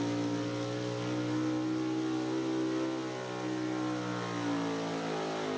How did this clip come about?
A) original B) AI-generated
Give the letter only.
A